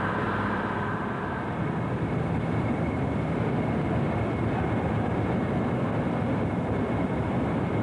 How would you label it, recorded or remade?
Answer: remade